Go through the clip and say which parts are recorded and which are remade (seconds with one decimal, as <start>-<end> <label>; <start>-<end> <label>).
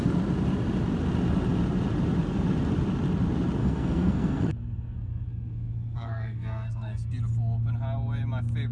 0.0-3.6 recorded; 3.6-7.1 remade; 7.1-8.7 recorded